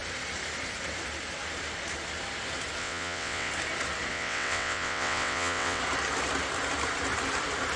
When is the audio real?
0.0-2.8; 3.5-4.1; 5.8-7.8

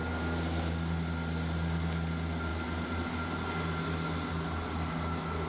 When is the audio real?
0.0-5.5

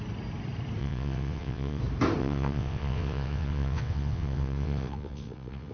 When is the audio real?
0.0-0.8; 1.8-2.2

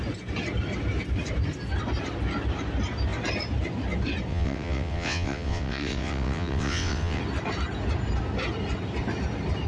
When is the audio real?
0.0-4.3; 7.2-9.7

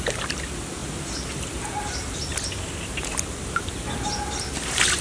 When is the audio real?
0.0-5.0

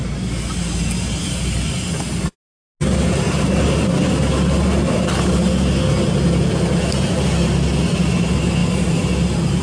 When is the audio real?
0.0-9.6

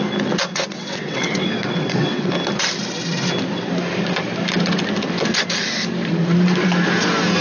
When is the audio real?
0.0-0.5; 2.3-7.4